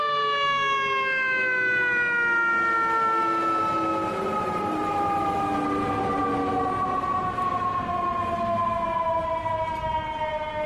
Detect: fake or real real